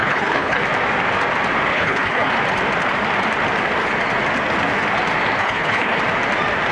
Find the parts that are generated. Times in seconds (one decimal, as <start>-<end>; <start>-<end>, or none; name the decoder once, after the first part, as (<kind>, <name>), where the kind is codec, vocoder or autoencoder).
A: 0.0-0.6 (codec, HILCodec); 1.7-2.3; 5.4-6.0